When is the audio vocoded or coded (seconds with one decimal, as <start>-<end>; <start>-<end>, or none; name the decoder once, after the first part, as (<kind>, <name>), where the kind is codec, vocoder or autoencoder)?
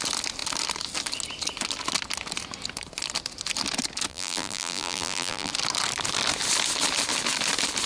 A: 4.1-5.5 (vocoder, BigVGAN v2)